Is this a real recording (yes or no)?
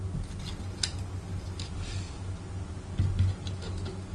yes